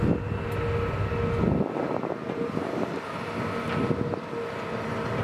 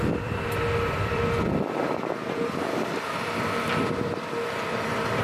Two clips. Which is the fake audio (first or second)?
second